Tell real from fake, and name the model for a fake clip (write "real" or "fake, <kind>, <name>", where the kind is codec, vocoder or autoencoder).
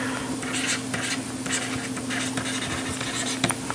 real